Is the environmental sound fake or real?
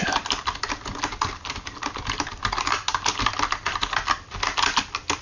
real